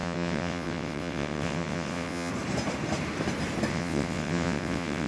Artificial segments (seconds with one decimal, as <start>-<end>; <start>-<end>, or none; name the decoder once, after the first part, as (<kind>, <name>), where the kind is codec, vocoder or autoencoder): 0.0-2.3 (vocoder, WaveNeXt); 3.7-5.1